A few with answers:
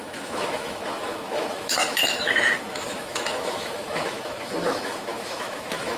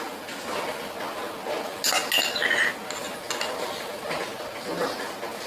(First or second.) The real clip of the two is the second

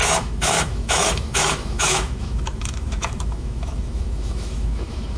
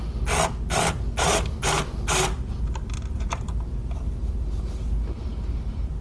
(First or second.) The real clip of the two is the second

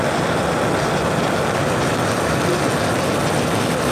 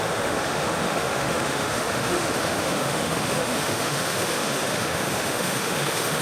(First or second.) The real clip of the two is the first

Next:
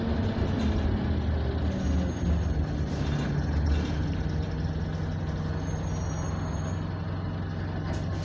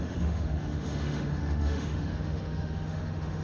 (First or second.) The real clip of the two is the first